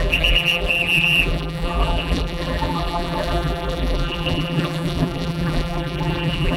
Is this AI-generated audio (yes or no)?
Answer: yes